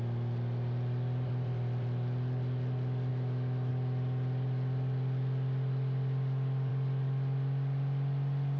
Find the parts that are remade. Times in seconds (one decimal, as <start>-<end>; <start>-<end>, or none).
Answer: 3.1-3.7